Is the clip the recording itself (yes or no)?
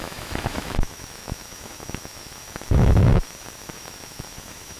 no